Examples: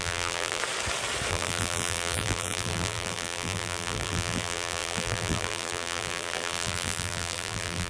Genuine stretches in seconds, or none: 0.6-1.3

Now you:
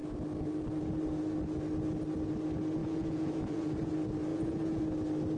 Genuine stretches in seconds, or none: 0.0-2.8; 3.9-4.3; 4.8-5.4